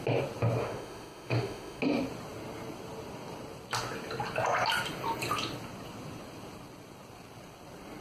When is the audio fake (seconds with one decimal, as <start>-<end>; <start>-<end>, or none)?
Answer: 0.6-1.8